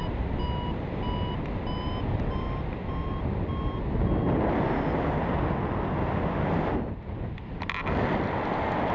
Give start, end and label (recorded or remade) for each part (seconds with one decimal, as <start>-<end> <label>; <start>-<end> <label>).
0.0-8.9 recorded